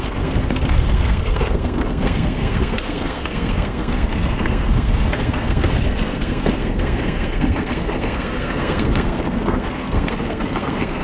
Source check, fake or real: fake